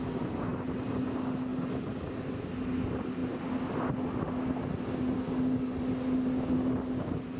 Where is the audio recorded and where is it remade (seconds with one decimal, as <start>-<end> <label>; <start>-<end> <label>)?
0.0-7.4 recorded